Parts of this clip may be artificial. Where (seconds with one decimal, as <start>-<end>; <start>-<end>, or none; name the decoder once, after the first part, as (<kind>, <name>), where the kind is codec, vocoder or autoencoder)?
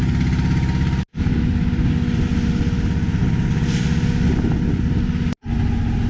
none